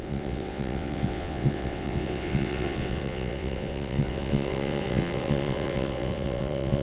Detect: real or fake fake